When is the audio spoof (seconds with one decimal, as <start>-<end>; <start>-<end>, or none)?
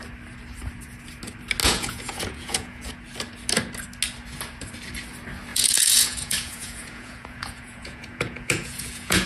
1.6-2.9; 5.5-9.3